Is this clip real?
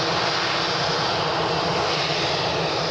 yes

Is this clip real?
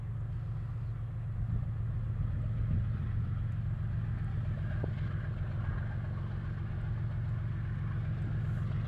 yes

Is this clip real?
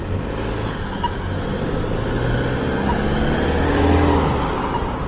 yes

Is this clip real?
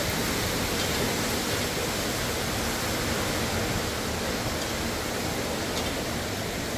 yes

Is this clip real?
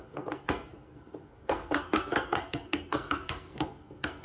no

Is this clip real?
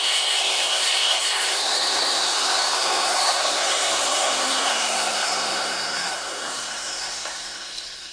no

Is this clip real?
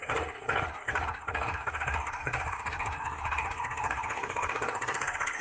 no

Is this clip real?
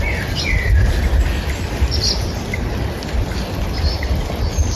yes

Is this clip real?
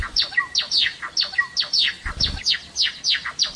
yes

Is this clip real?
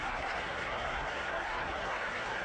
no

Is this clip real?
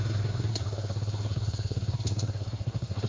no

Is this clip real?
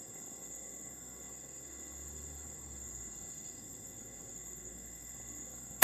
no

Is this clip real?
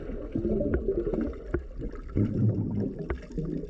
yes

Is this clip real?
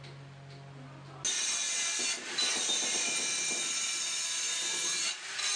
yes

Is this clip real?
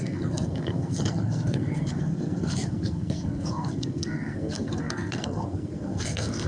no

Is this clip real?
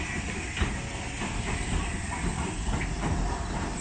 yes